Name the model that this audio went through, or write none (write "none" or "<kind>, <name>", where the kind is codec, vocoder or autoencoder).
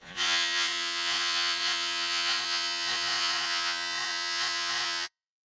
vocoder, Vocos